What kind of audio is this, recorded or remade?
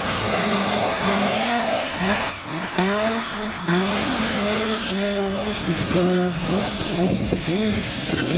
remade